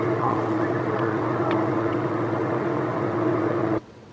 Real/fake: fake